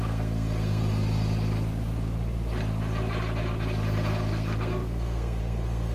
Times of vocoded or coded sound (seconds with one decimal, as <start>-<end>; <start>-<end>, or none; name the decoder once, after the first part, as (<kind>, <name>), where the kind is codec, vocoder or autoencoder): 0.0-0.8 (codec, SNAC); 4.3-5.9